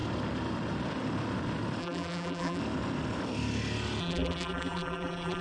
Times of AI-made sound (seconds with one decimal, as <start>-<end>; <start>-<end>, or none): 1.8-2.6; 4.0-5.4